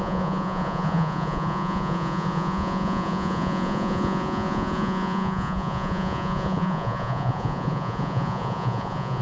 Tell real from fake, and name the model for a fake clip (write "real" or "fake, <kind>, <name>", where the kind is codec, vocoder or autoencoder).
fake, vocoder, Vocos